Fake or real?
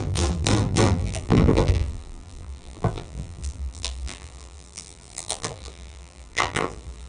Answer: fake